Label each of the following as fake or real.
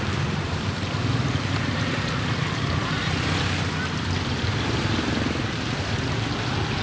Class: fake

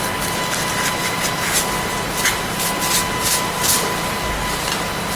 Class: real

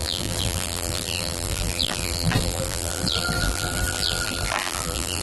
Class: fake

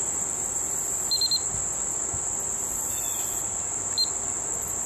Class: real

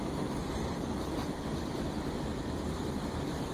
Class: real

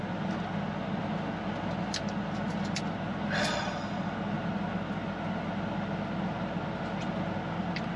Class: real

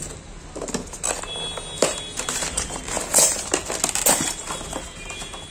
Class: real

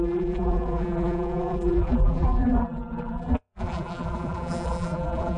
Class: fake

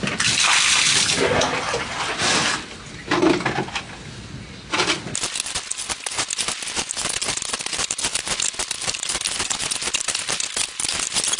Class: real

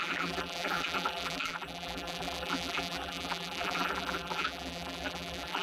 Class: fake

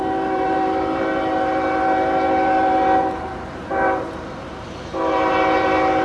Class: fake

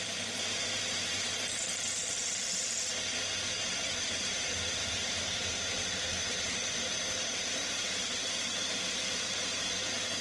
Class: fake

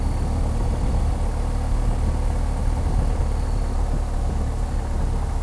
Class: real